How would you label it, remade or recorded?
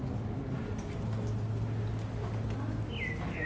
recorded